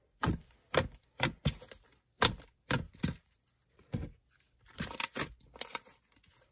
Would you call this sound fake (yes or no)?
yes